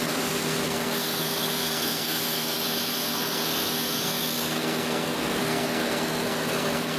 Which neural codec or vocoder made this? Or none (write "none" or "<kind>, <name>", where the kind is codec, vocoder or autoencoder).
codec, SNAC